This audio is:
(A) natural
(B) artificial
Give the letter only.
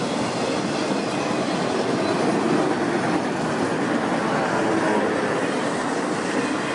A